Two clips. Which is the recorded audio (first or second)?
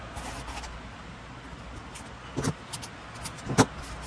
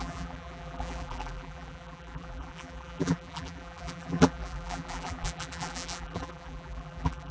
first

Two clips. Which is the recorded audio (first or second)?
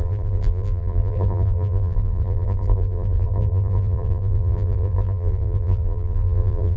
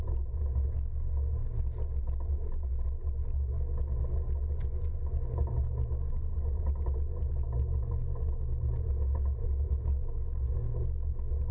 second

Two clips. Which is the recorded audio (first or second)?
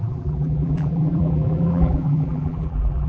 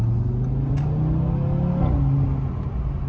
second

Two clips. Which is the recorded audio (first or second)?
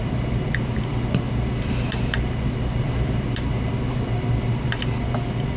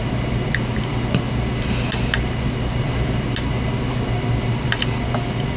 second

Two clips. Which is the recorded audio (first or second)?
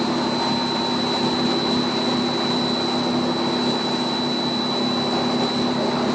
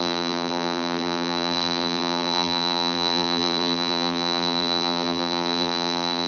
first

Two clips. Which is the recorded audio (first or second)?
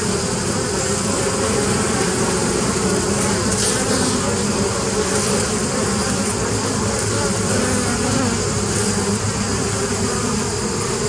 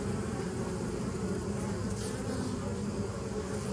second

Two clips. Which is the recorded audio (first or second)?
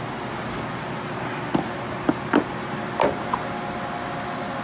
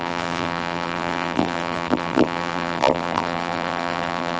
first